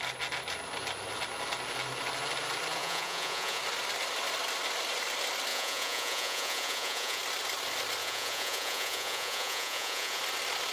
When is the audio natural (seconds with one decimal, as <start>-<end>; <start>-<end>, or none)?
0.0-2.8; 3.6-5.5; 7.2-8.0; 10.2-10.7

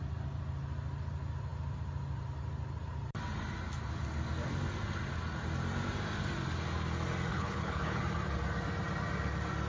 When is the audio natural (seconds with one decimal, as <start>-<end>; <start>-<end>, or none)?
0.0-7.3; 8.0-9.7

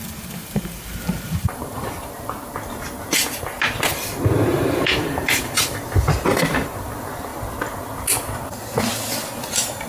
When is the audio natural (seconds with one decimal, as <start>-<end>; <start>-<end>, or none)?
2.1-4.5; 5.8-9.9

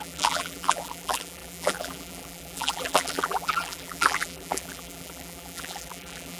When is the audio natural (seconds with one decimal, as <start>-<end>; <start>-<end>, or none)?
none

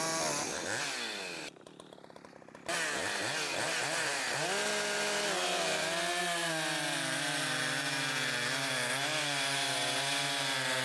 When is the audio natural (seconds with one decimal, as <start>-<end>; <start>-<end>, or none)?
0.0-10.8

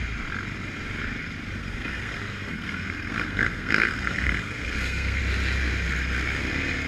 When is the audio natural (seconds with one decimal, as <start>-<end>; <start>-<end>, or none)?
0.0-1.6; 5.2-6.9

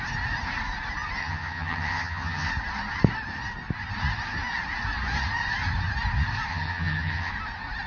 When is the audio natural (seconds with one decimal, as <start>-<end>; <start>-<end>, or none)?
0.0-1.2; 2.5-6.5; 7.3-7.9

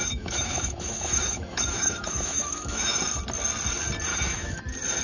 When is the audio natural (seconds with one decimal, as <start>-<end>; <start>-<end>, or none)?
3.0-4.1; 4.6-5.0